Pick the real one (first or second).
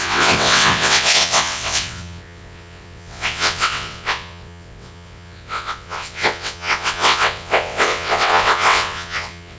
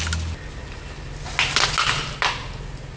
second